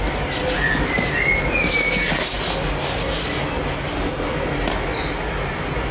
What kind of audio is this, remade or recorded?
recorded